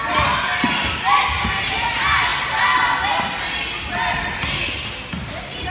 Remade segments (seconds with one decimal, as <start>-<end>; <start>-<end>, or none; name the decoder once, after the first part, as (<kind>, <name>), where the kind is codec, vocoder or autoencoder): none